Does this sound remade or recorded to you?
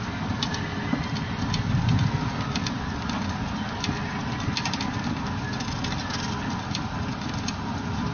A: recorded